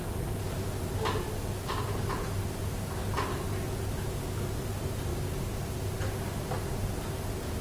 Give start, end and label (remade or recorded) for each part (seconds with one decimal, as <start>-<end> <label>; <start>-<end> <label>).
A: 0.0-7.6 recorded